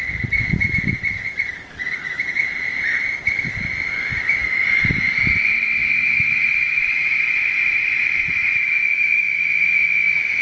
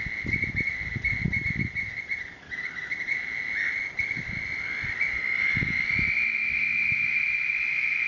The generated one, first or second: first